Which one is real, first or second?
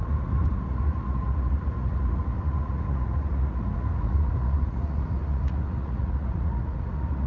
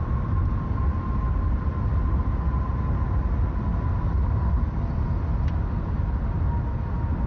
second